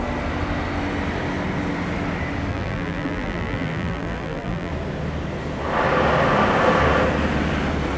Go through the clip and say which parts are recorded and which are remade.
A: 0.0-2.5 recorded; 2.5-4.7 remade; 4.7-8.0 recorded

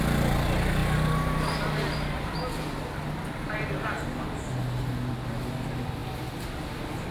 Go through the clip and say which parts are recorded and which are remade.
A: 0.0-7.1 recorded

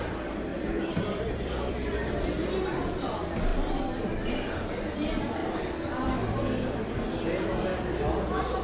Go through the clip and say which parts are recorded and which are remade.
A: 0.0-0.5 recorded; 0.5-2.0 remade; 2.0-3.5 recorded; 3.5-4.7 remade; 4.7-8.6 recorded

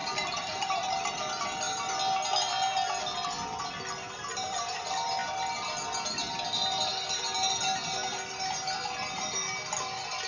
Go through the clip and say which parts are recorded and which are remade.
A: 0.0-1.2 remade; 1.2-4.3 recorded; 4.3-4.8 remade; 4.8-10.3 recorded

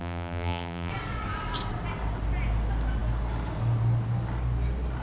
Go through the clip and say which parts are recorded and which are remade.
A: 0.0-0.9 remade; 0.9-5.0 recorded

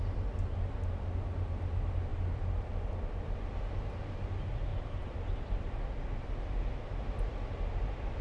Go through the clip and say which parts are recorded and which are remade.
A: 0.0-2.1 recorded; 2.1-3.2 remade; 3.2-4.7 recorded; 4.7-8.2 remade

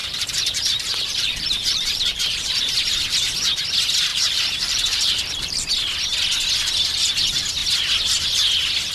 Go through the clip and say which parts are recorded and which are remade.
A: 0.0-2.7 remade; 2.7-4.1 recorded; 4.1-5.7 remade; 5.7-8.9 recorded

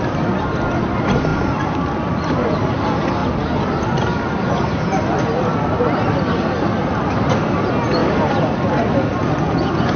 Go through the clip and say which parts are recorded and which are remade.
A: 0.0-1.3 recorded; 1.3-2.5 remade; 2.5-3.2 recorded; 3.2-4.5 remade; 4.5-8.0 recorded; 8.0-9.2 remade; 9.2-10.0 recorded